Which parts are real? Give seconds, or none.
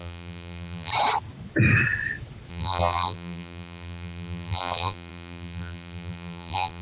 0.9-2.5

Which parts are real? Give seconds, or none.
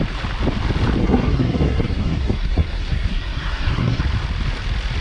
0.0-1.0; 4.0-5.0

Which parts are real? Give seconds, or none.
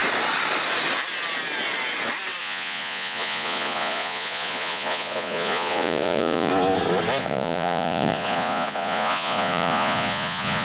0.0-2.4; 6.5-7.2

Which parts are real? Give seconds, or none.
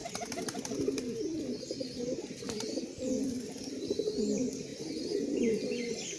0.0-6.2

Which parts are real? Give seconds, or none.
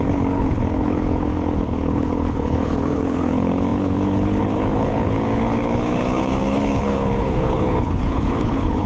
none